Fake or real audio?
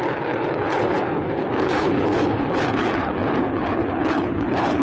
fake